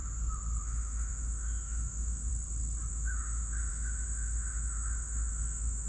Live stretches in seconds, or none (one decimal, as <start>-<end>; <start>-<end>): 0.0-0.6; 2.3-2.9